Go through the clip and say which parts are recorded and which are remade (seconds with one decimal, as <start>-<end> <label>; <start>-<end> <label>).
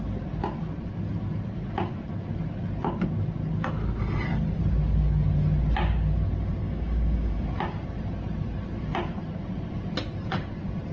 0.0-6.6 recorded; 6.6-7.4 remade; 7.4-10.9 recorded